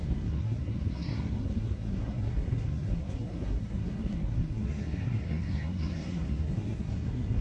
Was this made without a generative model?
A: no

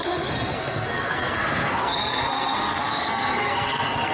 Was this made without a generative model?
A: no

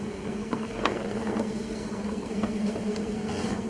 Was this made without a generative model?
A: no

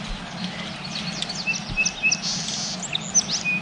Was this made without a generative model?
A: yes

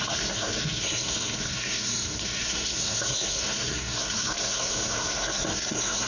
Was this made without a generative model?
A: no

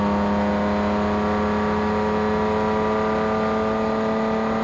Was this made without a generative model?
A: yes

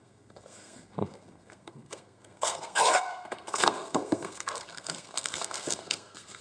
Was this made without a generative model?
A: no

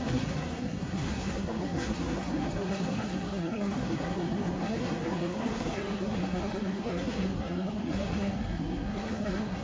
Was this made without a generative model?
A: no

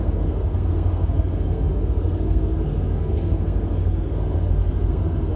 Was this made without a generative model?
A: no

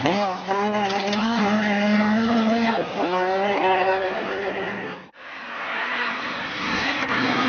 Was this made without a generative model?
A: no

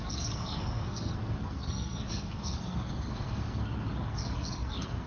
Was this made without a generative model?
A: no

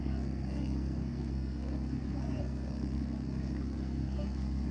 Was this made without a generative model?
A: no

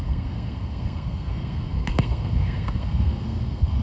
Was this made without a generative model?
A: no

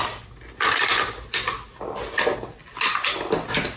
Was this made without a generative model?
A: yes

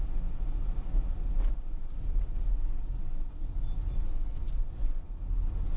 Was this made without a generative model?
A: yes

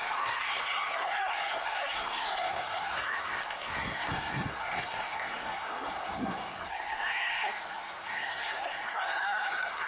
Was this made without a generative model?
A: no